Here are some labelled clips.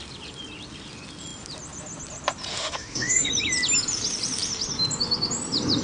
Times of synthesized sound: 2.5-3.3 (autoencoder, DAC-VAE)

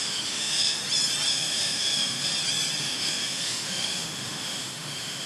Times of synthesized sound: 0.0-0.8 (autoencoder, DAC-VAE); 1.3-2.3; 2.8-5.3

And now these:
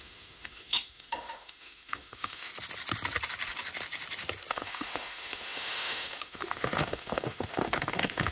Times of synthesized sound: 0.0-2.5 (autoencoder, DAC-VAE); 4.5-8.3

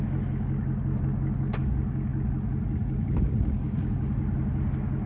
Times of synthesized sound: none

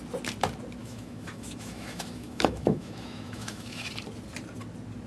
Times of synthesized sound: 0.8-3.9 (autoencoder, DAC-VAE)

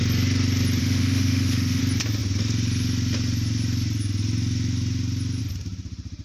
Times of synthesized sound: 0.8-1.8 (autoencoder, DAC-VAE)